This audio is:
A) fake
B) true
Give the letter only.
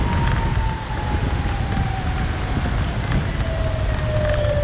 B